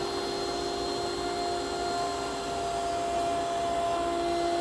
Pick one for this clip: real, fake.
real